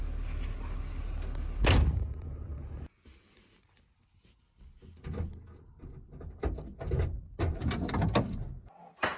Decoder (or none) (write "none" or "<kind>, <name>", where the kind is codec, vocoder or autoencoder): none